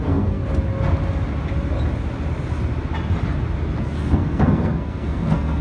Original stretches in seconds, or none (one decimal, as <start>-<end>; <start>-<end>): 0.4-3.8